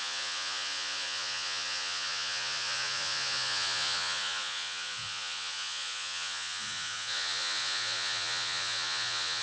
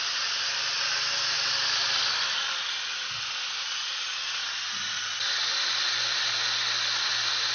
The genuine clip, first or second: second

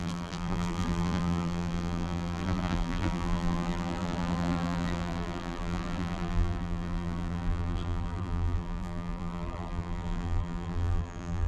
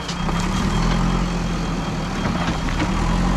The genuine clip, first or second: second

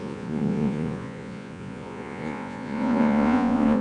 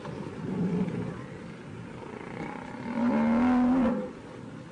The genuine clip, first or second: second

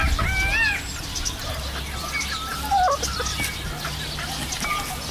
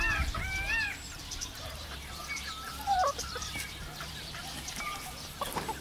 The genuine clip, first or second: first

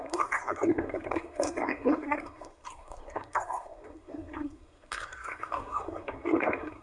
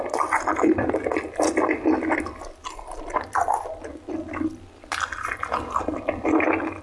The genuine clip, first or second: second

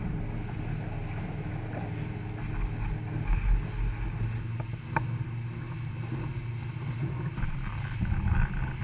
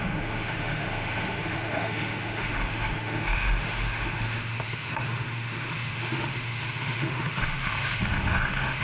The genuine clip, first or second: first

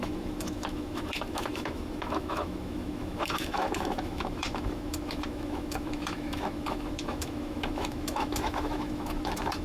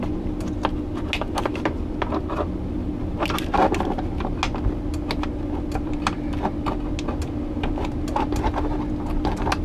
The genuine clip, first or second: second